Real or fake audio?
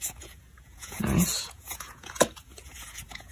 fake